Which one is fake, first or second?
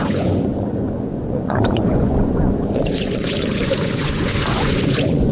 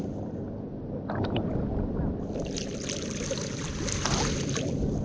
first